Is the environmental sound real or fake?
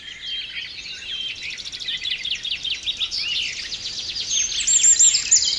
real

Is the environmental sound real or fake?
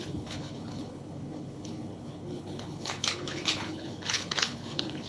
fake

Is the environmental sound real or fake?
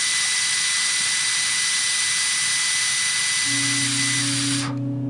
real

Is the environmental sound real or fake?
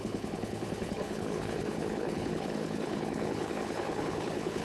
fake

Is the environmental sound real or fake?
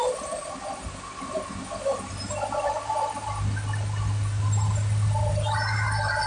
real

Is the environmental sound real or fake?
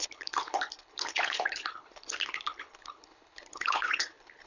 fake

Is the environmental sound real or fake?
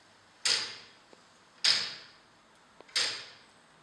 real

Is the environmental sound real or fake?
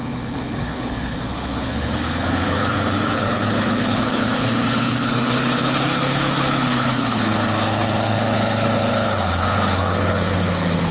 fake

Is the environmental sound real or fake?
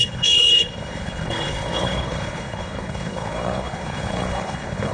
fake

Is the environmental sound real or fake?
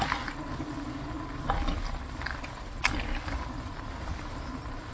real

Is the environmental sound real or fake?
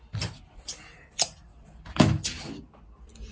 real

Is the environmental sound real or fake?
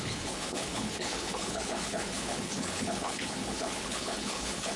fake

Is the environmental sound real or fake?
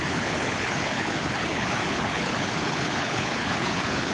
fake